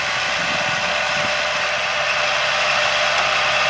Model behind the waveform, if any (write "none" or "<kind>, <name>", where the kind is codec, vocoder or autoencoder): none